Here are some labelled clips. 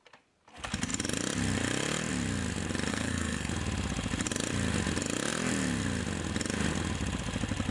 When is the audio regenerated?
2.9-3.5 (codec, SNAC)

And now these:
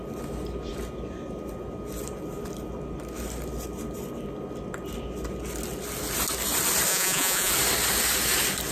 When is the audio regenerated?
6.9-7.5 (vocoder, Vocos)

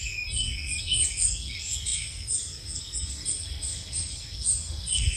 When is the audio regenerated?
0.0-5.2 (codec, SNAC)

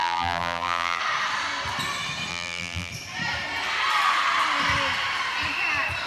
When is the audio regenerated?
0.0-1.0 (vocoder, BigVGAN v2); 2.3-2.9

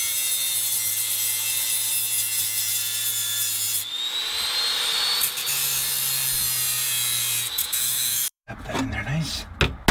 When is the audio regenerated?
7.6-8.5 (autoencoder, DAC-VAE)

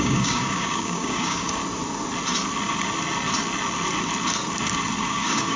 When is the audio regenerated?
0.0-1.6 (codec, DAC); 5.0-5.6

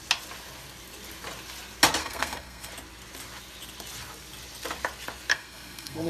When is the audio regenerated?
2.0-2.7 (codec, SNAC); 5.3-6.1